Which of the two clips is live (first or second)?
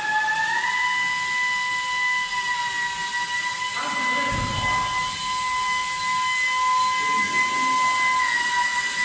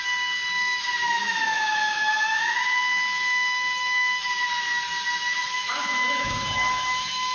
first